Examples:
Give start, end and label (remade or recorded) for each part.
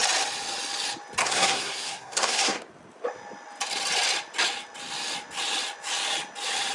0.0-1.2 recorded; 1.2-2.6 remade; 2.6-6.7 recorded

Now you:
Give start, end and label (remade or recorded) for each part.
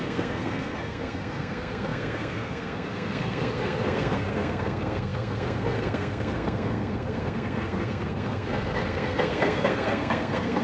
0.0-10.6 remade